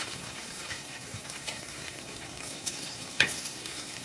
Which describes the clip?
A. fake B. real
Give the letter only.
A